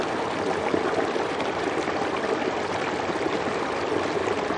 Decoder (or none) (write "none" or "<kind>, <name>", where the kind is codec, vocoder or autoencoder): none